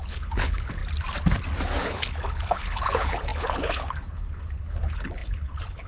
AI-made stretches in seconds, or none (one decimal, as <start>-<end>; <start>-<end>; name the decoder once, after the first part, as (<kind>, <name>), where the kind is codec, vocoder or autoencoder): 0.0-0.8 (codec, HILCodec); 1.8-5.9